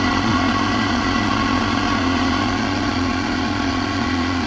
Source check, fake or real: fake